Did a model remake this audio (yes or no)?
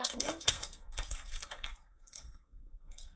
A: yes